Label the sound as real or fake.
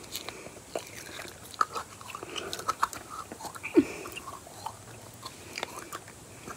real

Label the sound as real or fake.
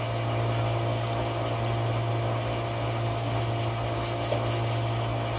real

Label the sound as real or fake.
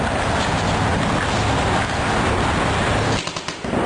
real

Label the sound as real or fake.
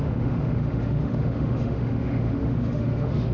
fake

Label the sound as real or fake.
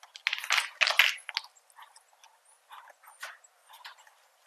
real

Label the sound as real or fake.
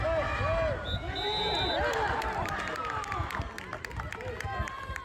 real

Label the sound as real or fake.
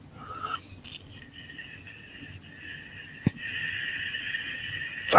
real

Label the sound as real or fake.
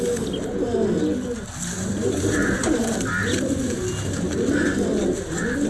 real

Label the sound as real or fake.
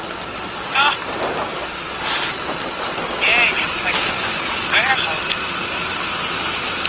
real